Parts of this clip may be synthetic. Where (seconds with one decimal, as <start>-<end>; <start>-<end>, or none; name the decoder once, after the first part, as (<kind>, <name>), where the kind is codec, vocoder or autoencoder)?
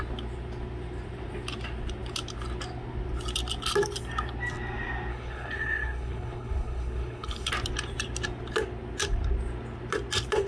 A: 5.1-7.5 (codec, HILCodec)